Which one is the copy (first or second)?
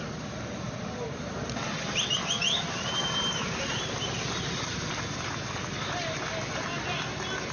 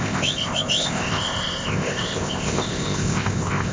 second